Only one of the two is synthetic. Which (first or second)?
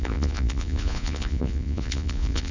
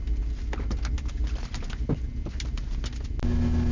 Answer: first